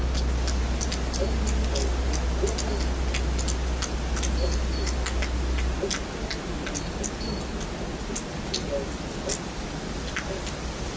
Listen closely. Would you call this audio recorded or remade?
recorded